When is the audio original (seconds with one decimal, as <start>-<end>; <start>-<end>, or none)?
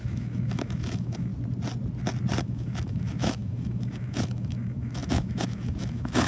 1.3-2.4